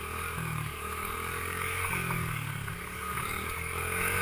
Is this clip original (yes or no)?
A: no